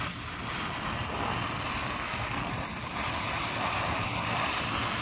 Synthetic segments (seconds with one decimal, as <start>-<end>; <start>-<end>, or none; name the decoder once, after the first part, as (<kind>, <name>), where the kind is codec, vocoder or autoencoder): 1.8-2.5 (codec, SNAC)